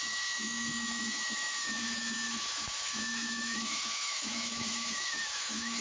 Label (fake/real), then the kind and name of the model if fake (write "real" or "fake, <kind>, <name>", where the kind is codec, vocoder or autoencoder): fake, autoencoder, DAC-VAE